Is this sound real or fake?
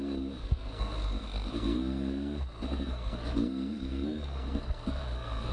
fake